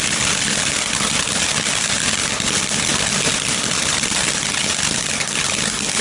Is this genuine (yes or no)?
yes